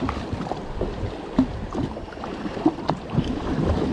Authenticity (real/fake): real